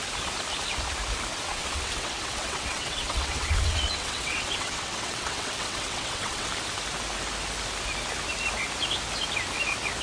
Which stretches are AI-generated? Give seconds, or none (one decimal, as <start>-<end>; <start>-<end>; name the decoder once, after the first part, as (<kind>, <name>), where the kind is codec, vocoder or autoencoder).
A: 1.5-6.5 (vocoder, WaveNeXt)